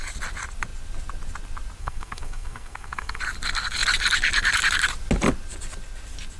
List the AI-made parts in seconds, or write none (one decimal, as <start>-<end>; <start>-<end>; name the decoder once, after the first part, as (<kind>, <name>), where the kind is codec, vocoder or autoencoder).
1.8-3.2 (codec, SNAC)